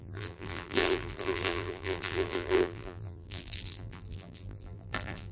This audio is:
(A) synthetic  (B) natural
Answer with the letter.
A